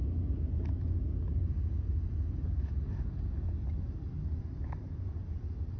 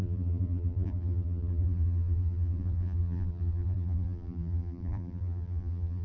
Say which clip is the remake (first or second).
second